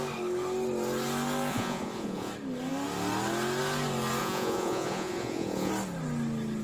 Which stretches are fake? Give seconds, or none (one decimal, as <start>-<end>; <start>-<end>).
1.5-2.3; 4.2-5.7